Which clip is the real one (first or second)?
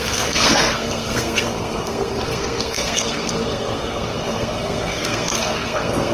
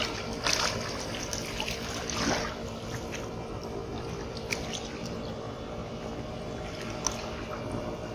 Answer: second